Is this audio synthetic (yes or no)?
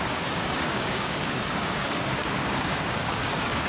yes